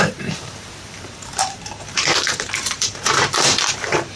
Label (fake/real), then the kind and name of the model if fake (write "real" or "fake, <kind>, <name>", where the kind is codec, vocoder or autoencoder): fake, vocoder, BigVGAN v2